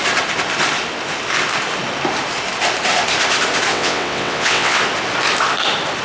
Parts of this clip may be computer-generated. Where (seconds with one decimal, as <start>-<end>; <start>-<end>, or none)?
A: 3.7-4.8

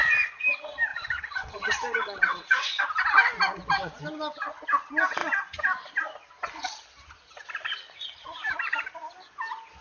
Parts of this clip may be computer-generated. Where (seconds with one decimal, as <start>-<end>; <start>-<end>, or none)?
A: 0.9-2.8